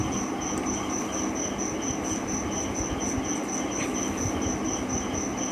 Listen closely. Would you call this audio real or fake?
real